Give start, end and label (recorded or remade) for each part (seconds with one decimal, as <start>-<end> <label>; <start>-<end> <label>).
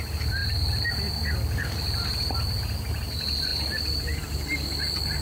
0.0-5.2 recorded